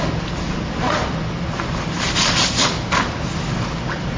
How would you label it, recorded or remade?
recorded